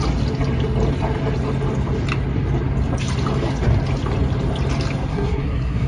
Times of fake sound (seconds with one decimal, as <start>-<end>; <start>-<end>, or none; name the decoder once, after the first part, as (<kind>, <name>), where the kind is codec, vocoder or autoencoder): 5.1-5.9 (codec, SNAC)